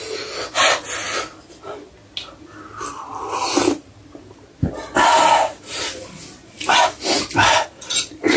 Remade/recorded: recorded